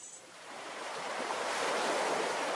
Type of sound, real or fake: fake